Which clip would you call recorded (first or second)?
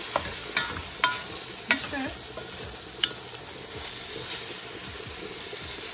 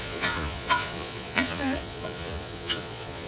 first